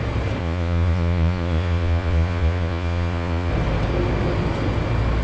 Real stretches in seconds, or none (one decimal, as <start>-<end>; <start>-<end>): 0.0-0.4; 3.5-5.2